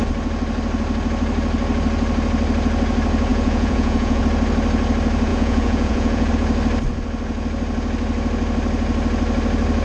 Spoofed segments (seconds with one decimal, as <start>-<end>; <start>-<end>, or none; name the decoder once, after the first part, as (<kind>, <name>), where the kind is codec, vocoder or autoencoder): 3.3-4.2 (vocoder, Vocos); 5.3-6.3